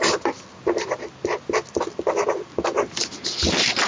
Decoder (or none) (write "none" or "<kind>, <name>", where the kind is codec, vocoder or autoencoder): none